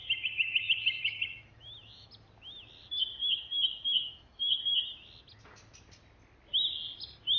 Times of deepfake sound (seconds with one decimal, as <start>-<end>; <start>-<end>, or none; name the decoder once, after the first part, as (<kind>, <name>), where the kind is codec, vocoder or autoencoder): 0.0-2.1 (autoencoder, DAC-VAE); 3.2-4.6